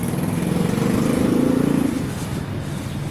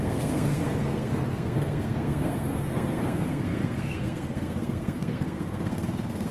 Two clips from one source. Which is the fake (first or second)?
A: second